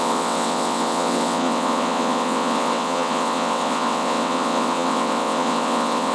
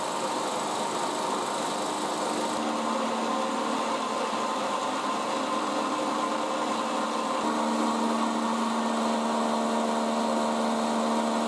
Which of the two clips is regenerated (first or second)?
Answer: first